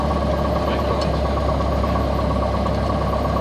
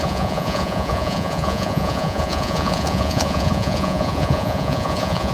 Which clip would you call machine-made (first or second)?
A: second